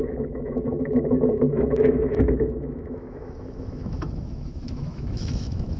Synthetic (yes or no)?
yes